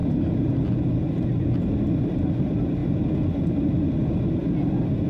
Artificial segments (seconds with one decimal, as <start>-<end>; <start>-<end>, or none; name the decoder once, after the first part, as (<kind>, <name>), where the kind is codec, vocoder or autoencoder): 2.3-2.8 (vocoder, BigVGAN v2); 3.4-4.4